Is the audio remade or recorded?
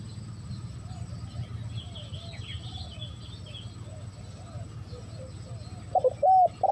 recorded